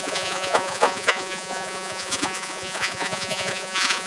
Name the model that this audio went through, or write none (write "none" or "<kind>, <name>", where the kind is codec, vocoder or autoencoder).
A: vocoder, Vocos